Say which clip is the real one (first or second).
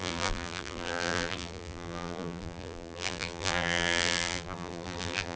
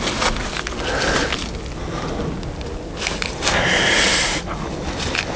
second